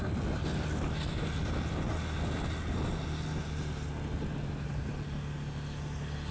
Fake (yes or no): no